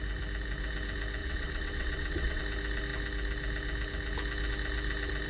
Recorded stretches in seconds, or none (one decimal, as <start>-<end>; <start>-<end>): 0.0-1.2; 2.4-5.3